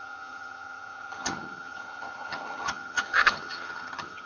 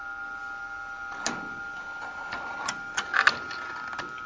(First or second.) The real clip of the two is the second